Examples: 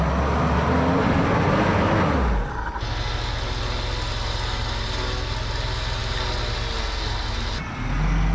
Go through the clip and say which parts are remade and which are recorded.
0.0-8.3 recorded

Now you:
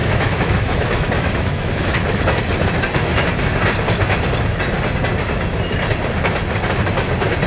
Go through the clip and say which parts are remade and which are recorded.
0.0-2.4 remade; 2.4-7.5 recorded

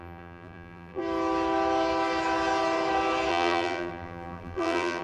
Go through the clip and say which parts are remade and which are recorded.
0.0-1.0 remade; 1.0-3.3 recorded; 3.3-5.0 remade

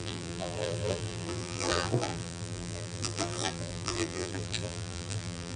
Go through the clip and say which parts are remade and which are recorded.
0.0-5.6 remade

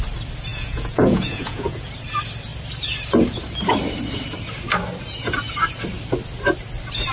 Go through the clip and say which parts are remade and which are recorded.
0.0-0.5 recorded; 0.5-1.9 remade; 1.9-7.1 recorded

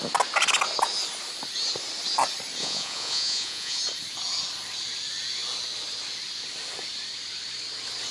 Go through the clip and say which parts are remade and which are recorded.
0.0-2.6 recorded; 2.6-3.8 remade; 3.8-8.1 recorded

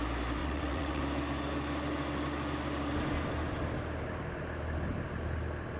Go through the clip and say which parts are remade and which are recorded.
0.0-0.4 recorded; 0.4-1.0 remade; 1.0-5.8 recorded